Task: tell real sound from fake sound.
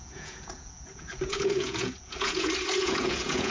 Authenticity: fake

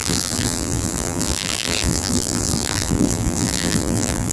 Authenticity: fake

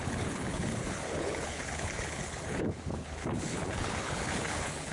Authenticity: fake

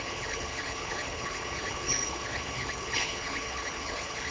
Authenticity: fake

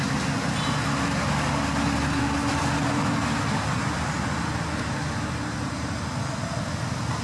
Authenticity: real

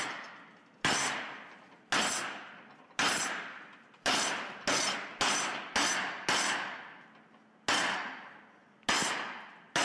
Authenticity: real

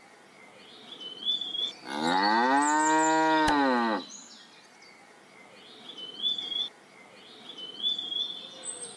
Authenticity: real